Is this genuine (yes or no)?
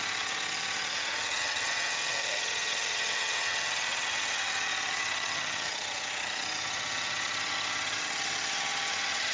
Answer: no